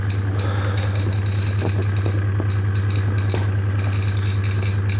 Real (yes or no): yes